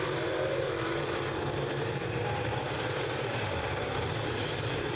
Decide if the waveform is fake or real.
fake